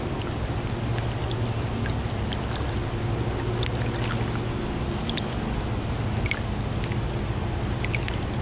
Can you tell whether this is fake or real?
real